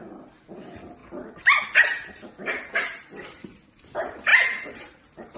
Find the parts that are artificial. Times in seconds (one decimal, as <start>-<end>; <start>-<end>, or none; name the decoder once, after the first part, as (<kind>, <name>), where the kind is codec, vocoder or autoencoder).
1.0-1.6 (vocoder, BigVGAN v2); 4.3-5.4